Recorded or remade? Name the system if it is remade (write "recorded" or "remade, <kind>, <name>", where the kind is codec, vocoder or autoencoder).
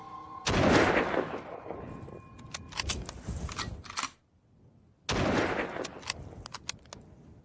recorded